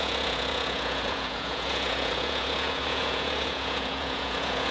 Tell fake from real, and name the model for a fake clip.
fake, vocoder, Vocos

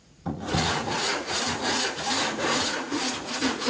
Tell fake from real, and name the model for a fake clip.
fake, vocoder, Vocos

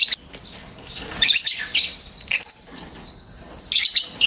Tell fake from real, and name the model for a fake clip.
real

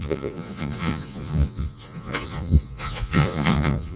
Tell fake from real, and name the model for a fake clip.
fake, vocoder, Vocos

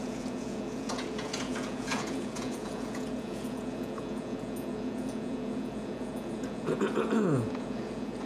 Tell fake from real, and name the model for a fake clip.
fake, vocoder, Vocos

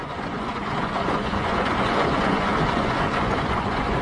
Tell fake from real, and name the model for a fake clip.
fake, vocoder, Vocos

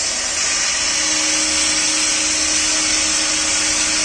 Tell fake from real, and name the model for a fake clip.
real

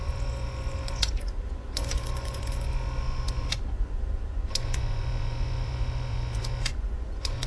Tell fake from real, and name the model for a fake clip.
fake, vocoder, Vocos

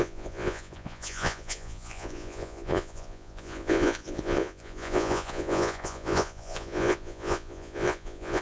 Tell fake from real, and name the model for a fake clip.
fake, vocoder, Vocos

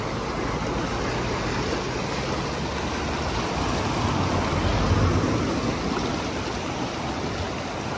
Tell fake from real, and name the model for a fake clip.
real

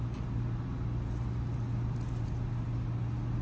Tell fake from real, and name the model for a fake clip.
real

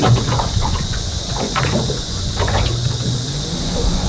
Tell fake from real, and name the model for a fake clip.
fake, vocoder, Vocos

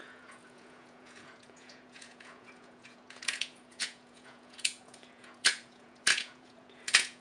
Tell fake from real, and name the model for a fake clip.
fake, vocoder, Vocos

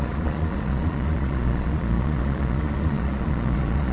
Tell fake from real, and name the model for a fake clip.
fake, vocoder, Vocos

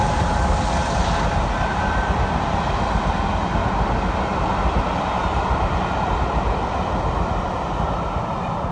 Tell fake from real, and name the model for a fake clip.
real